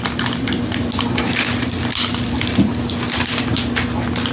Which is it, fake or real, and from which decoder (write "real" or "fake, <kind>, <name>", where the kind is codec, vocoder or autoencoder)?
real